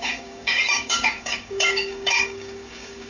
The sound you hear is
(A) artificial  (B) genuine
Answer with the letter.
A